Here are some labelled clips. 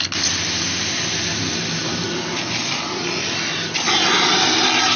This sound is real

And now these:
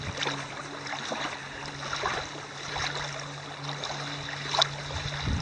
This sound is real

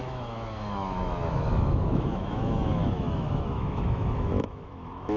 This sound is fake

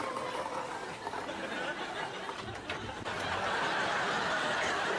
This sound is real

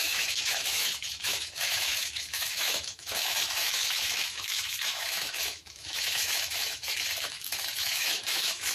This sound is fake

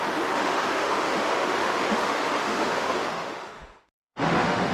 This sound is fake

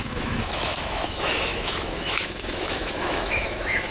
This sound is fake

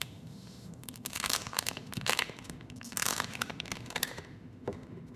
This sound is fake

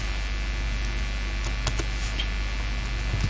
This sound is real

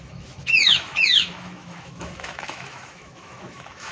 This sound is fake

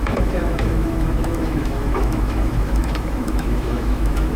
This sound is fake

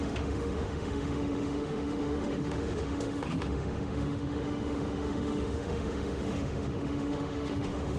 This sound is fake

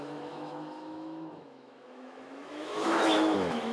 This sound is fake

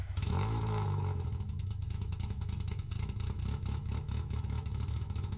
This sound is fake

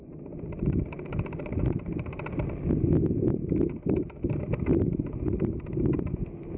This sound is real